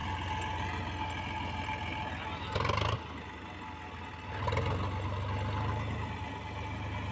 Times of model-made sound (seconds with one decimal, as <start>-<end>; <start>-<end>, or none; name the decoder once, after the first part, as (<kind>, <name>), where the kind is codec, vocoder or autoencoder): none